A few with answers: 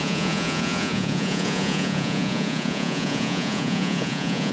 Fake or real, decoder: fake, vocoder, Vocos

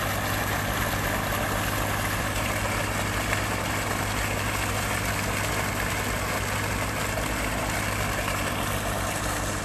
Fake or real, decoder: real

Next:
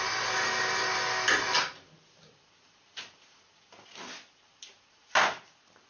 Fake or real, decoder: real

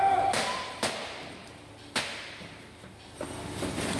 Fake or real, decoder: real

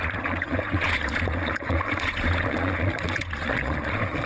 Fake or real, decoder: fake, vocoder, Vocos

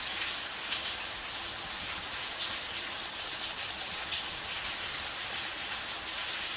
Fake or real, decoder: real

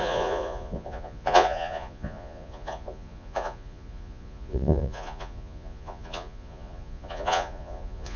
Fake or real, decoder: fake, vocoder, Vocos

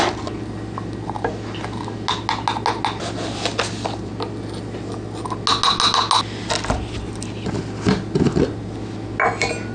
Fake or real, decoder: real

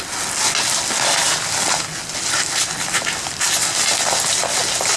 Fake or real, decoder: real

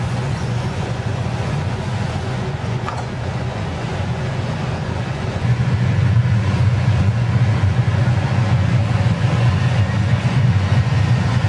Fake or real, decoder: fake, vocoder, Vocos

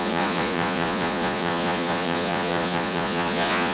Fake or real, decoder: fake, vocoder, Vocos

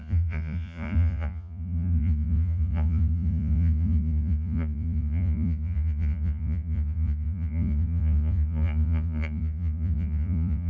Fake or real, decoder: fake, vocoder, Vocos